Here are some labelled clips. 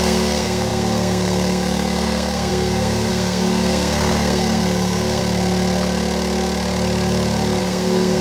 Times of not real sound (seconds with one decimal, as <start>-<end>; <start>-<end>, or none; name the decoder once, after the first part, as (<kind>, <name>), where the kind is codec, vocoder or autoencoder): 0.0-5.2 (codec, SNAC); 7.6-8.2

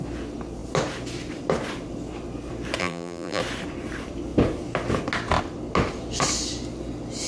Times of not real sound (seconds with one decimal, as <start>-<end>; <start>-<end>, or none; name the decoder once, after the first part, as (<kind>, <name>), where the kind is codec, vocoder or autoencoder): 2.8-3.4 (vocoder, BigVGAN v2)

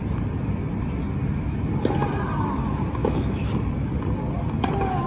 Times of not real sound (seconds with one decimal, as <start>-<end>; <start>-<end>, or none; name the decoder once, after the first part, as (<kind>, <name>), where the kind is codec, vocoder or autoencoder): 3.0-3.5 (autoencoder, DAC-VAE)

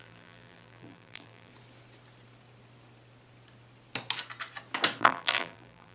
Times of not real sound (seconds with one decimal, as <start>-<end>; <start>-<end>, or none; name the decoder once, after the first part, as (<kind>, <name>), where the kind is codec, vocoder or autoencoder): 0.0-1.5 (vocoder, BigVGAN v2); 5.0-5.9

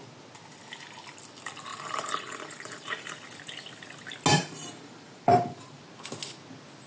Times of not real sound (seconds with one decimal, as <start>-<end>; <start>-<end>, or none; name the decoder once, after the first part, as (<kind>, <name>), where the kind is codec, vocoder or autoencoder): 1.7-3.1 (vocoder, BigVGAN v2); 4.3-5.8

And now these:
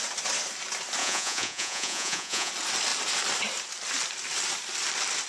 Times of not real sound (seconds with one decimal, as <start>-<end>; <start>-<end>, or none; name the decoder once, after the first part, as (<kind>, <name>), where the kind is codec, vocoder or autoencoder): 1.0-2.5 (vocoder, Vocos)